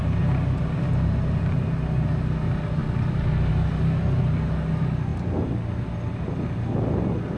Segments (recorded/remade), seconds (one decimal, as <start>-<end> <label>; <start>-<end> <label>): 0.0-7.4 recorded